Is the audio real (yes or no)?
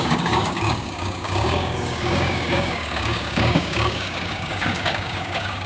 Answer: no